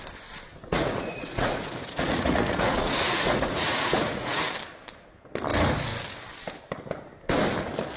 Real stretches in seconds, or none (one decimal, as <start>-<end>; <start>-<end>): 0.0-0.5; 4.4-8.0